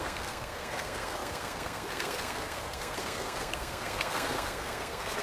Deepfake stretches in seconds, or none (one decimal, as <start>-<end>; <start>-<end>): 0.0-5.2